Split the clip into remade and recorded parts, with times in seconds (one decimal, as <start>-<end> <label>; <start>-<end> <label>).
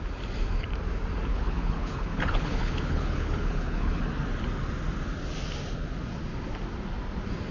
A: 0.0-1.3 recorded; 1.3-4.0 remade; 4.0-7.5 recorded